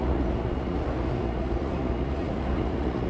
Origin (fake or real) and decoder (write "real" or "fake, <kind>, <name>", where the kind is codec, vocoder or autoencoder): fake, vocoder, Vocos